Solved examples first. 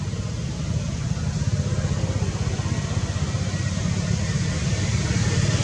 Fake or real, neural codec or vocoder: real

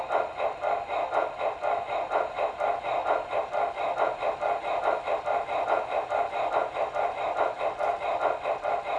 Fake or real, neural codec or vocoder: real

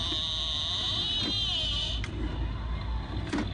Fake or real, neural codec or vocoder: real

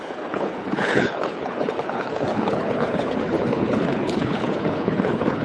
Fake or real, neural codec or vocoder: fake, codec, HILCodec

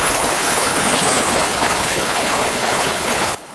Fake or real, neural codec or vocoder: fake, codec, HILCodec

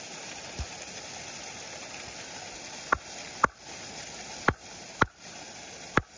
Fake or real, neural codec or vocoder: real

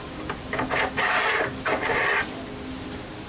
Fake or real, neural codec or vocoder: real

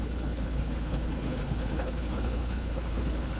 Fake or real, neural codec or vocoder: fake, codec, HILCodec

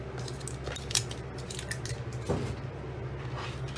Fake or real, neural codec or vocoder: real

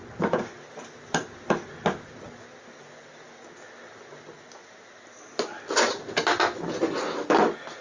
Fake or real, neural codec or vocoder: real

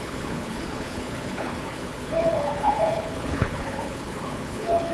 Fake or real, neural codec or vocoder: fake, codec, HILCodec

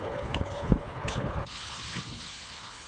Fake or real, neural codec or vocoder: fake, codec, HILCodec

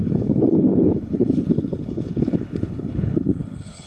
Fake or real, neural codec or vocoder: fake, codec, HILCodec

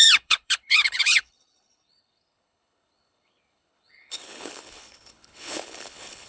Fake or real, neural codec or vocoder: fake, codec, HILCodec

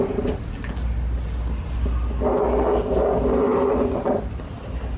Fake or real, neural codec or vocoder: real